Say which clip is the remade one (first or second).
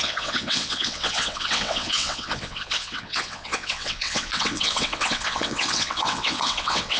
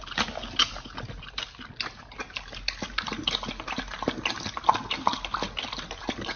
first